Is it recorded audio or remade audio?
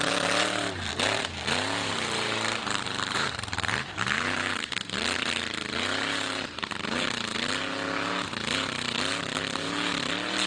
remade